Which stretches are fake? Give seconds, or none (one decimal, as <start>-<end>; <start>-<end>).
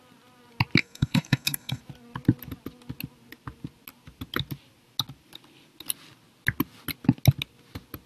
0.8-1.8